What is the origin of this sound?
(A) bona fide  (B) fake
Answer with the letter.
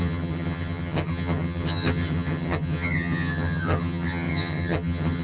B